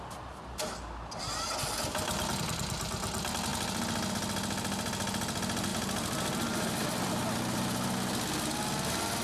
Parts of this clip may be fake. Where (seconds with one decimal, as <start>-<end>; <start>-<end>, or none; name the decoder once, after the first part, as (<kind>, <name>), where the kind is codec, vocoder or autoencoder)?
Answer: 5.7-7.1 (vocoder, BigVGAN v2)